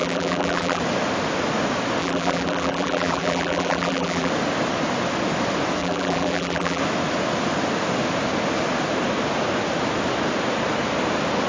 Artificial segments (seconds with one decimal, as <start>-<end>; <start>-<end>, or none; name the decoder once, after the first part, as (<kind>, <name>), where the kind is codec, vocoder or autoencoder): 0.0-0.8 (vocoder, BigVGAN v2); 2.0-4.3; 5.8-6.8